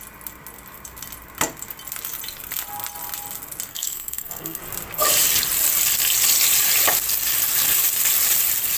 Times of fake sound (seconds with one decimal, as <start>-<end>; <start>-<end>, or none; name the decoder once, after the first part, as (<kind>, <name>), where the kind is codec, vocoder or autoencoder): 3.7-4.6 (codec, SNAC)